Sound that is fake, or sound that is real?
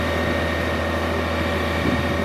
real